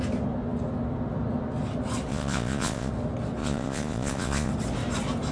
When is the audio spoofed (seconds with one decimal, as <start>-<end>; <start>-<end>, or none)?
2.1-2.9; 3.4-4.5